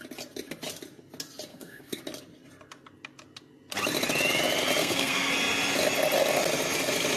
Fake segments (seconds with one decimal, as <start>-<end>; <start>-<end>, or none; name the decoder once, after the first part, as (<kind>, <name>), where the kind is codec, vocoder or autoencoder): 1.5-2.0 (codec, SNAC); 4.8-5.3